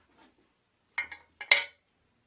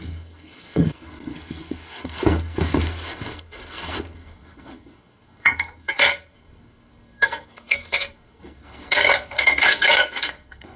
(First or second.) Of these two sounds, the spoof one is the second